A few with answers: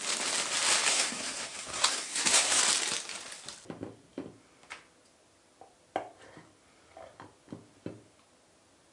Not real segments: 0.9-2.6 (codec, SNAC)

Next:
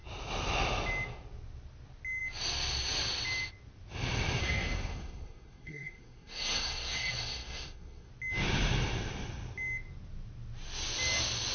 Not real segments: 4.4-8.1 (codec, SNAC)

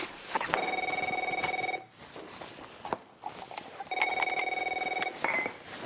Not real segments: none

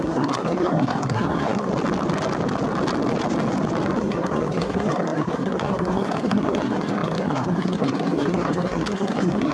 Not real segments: 0.0-1.7 (codec, SNAC); 4.0-9.5